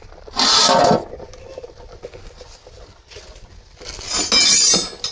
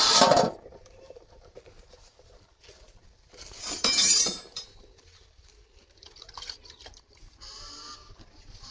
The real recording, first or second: first